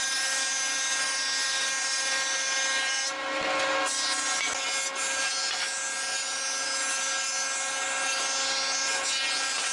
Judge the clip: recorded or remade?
recorded